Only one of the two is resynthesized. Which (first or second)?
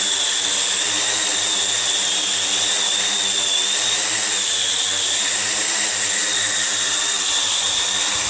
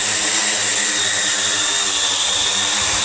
first